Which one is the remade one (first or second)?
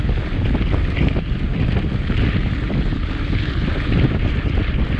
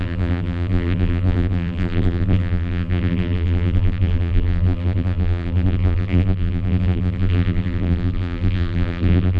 second